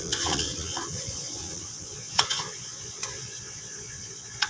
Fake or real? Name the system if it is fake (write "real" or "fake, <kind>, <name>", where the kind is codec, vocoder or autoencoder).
fake, vocoder, Vocos